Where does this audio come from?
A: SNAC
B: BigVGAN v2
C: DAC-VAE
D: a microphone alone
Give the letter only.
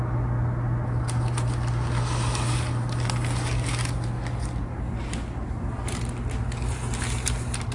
D